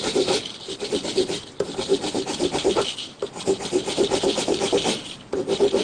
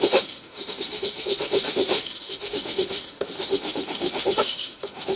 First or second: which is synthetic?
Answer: second